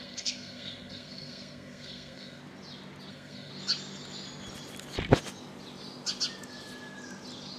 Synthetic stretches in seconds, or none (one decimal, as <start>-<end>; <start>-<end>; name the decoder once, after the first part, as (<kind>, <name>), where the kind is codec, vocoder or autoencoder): 0.0-2.4 (codec, SNAC); 3.1-3.5